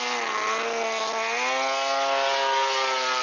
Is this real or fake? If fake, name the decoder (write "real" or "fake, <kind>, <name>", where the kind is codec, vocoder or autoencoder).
real